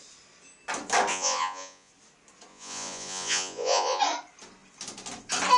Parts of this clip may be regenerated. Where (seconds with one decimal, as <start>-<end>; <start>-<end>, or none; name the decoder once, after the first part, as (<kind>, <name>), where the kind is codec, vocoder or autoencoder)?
1.1-1.9 (vocoder, Vocos); 2.5-4.0